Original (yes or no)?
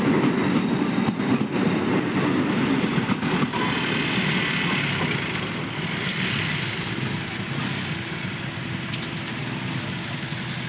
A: yes